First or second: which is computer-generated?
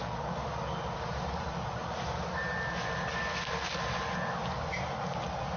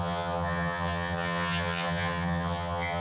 second